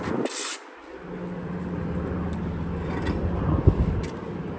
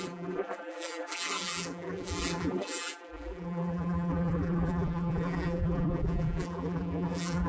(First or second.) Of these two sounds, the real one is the first